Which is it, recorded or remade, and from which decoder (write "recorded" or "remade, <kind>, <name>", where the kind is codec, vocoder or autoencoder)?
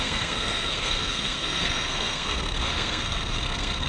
remade, codec, SNAC